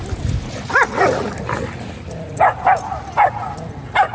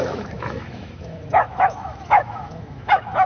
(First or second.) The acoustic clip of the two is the first